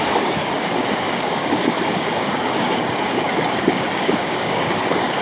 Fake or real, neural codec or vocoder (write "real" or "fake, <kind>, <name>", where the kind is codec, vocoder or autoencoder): fake, codec, DAC